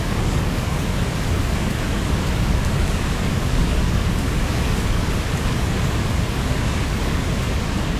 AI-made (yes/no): yes